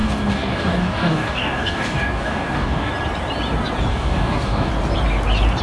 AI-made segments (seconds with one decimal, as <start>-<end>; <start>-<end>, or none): 0.0-2.9; 3.9-4.7